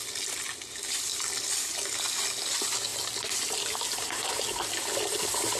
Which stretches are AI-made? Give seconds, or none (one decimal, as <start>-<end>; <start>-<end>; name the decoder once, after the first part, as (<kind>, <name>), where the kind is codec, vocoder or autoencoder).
none